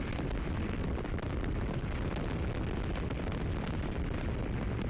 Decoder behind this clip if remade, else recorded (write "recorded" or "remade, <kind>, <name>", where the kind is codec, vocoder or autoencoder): remade, vocoder, BigVGAN v2